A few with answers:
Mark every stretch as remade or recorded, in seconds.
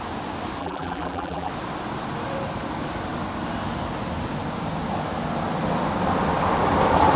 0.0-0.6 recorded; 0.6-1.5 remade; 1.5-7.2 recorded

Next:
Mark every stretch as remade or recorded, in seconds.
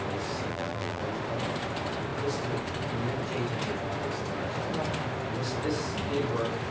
0.0-0.5 recorded; 0.5-1.0 remade; 1.0-6.7 recorded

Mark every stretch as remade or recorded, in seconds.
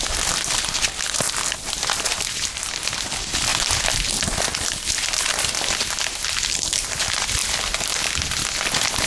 0.0-9.1 recorded